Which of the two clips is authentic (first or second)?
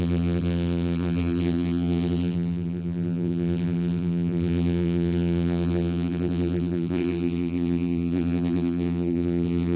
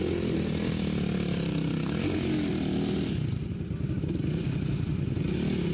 second